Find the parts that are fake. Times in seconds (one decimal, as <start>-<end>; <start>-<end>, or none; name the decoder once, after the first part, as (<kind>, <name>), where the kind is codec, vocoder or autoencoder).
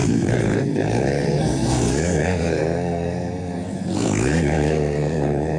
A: 0.0-5.6 (codec, SNAC)